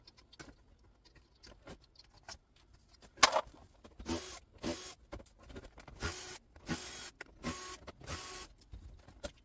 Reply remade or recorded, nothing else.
recorded